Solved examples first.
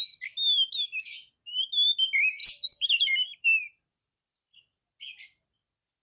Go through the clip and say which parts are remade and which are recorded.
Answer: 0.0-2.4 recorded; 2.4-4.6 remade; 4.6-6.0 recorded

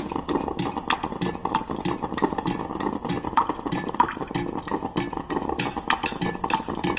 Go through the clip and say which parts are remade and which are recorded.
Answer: 0.0-7.0 recorded

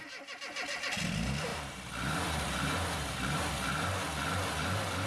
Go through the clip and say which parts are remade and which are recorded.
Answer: 0.0-1.5 recorded; 1.5-3.5 remade; 3.5-5.1 recorded